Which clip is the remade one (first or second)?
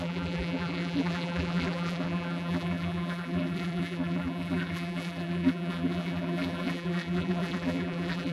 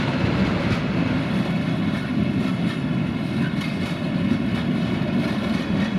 first